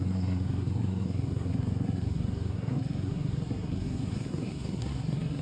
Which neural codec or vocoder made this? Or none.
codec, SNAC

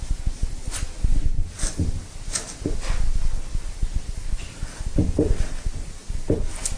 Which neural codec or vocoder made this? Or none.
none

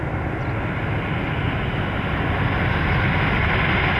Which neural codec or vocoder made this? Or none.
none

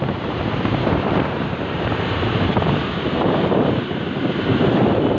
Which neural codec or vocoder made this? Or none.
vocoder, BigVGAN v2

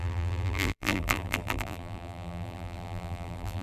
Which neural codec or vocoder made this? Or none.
vocoder, BigVGAN v2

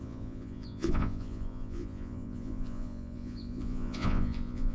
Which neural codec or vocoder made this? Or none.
vocoder, Vocos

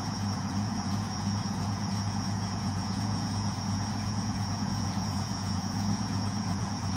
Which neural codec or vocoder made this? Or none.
vocoder, Vocos